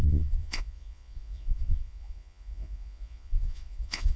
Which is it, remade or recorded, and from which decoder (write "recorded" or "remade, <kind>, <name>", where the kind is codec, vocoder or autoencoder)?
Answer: remade, vocoder, Vocos